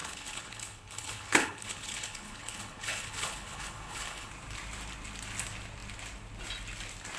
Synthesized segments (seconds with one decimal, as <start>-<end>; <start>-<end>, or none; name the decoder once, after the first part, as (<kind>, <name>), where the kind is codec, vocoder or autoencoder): 0.0-4.3 (codec, HILCodec)